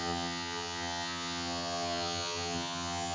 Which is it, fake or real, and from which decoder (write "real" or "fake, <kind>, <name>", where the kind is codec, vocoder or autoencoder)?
fake, vocoder, HiFi-GAN